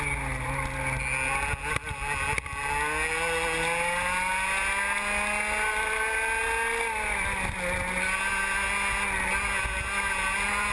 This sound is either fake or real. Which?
real